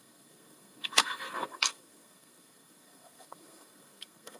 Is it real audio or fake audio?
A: fake